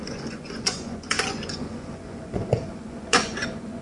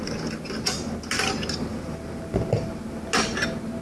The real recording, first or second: second